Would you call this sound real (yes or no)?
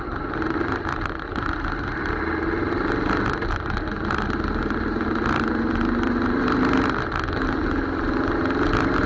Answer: yes